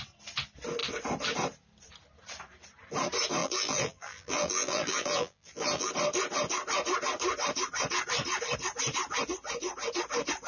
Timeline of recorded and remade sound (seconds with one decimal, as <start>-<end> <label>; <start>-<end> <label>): 0.0-3.4 recorded; 3.4-5.9 remade; 5.9-10.5 recorded